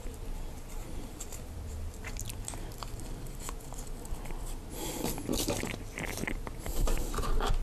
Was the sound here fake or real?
fake